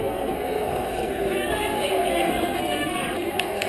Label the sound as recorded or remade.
remade